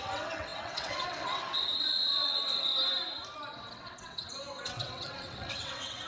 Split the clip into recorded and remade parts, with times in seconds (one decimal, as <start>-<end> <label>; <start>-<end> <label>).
0.0-2.7 remade; 2.7-3.5 recorded; 3.5-6.1 remade

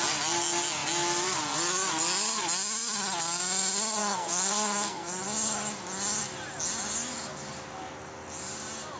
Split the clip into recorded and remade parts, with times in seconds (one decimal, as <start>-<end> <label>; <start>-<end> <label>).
0.0-4.0 recorded; 4.0-5.2 remade; 5.2-9.0 recorded